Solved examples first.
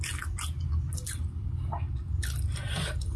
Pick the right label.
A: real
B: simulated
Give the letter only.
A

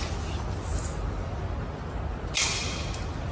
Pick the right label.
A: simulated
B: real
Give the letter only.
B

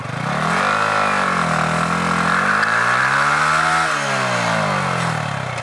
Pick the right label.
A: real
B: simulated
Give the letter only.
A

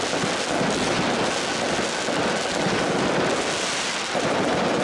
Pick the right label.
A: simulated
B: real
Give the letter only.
B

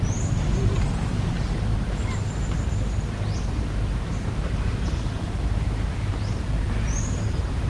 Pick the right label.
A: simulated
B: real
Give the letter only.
A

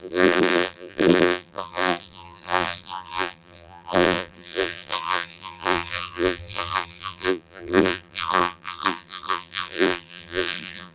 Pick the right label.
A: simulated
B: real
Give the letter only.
A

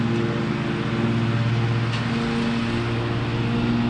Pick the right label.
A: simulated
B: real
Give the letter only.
B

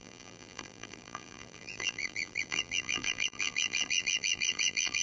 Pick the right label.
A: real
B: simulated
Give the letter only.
B